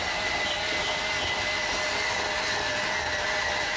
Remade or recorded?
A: recorded